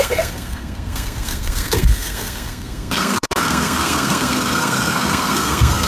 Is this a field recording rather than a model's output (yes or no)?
no